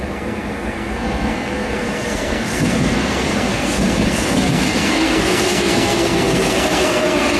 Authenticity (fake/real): fake